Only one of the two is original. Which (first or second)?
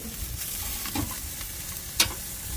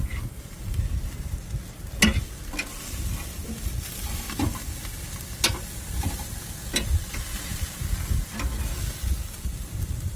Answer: second